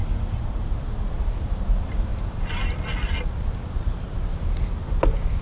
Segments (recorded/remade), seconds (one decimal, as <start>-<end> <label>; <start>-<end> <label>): 0.0-5.4 recorded